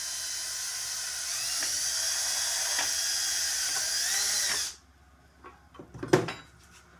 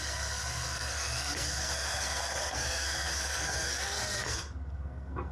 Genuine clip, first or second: first